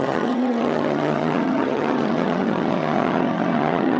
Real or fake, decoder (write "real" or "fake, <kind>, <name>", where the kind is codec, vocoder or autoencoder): fake, vocoder, HiFi-GAN